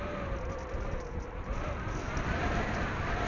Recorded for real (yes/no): yes